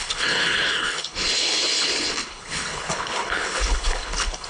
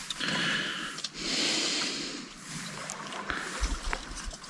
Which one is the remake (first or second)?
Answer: first